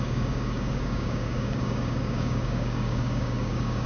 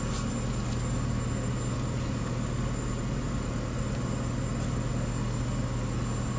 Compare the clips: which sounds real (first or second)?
second